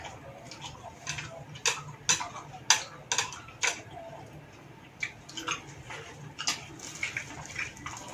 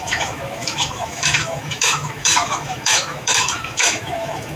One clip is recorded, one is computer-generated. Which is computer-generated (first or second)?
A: second